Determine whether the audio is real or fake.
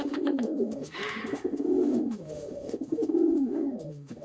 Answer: fake